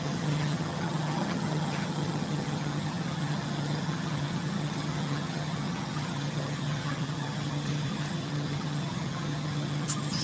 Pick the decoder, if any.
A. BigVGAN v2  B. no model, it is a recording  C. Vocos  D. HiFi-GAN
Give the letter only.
D